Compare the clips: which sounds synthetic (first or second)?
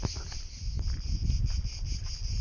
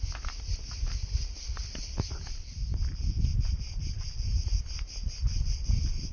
second